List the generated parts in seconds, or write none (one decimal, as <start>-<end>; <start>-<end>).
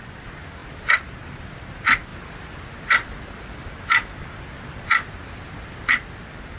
none